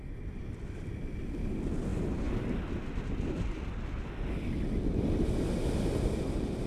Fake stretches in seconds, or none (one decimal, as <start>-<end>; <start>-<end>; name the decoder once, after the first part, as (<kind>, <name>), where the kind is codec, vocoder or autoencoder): none